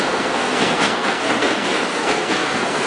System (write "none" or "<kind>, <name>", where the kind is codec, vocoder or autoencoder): codec, SNAC